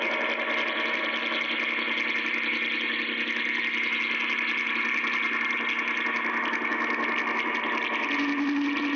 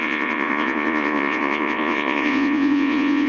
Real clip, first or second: first